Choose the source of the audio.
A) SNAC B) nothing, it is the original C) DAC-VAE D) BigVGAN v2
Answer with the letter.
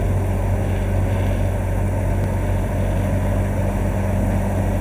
B